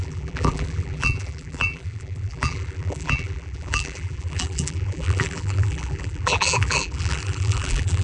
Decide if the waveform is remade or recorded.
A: remade